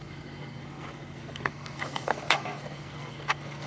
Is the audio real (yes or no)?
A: no